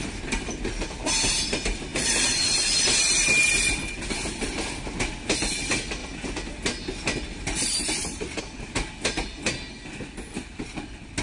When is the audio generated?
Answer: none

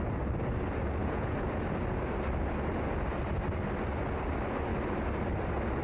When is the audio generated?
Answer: 1.0-1.6

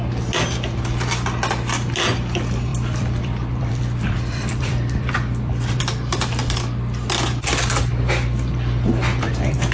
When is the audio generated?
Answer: 2.7-5.8

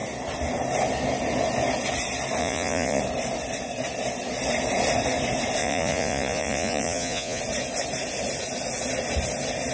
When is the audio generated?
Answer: 2.4-3.0; 5.6-7.4

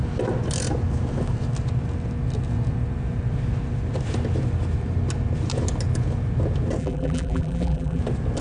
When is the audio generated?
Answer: 6.8-8.0

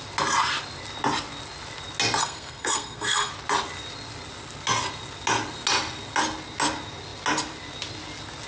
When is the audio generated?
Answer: 2.2-3.3